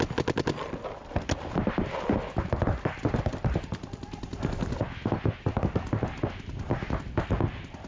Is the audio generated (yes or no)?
no